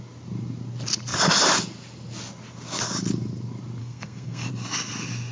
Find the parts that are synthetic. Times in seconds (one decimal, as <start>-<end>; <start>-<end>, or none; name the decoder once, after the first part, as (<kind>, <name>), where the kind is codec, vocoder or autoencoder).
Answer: 3.8-4.5 (codec, SNAC)